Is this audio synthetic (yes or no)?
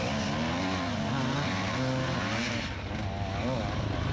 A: no